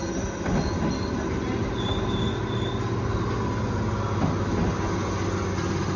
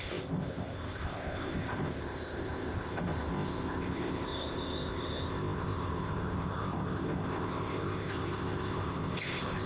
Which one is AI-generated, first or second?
second